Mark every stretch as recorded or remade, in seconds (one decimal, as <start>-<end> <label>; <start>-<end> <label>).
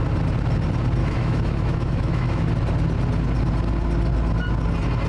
0.0-1.0 recorded; 1.0-2.5 remade; 2.5-5.1 recorded